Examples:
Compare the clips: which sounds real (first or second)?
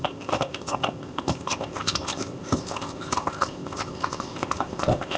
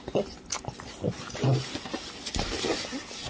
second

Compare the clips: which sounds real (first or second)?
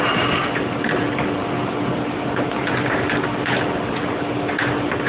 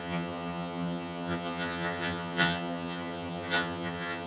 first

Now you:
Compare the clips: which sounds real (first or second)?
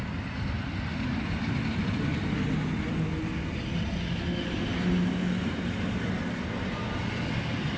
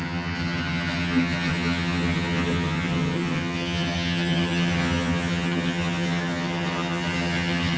first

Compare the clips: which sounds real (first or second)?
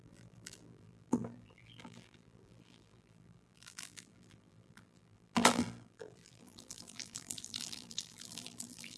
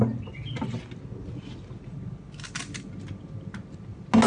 second